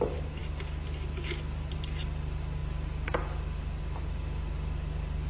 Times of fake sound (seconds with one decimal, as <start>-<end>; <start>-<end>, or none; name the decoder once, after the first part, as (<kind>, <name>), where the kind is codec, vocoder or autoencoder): none